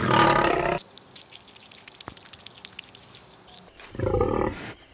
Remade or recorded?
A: recorded